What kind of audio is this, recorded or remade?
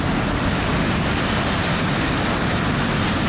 recorded